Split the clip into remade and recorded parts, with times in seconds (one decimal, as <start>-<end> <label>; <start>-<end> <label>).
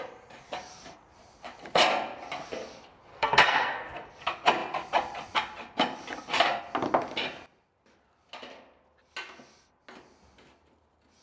0.0-3.1 recorded; 3.1-4.1 remade; 4.1-11.2 recorded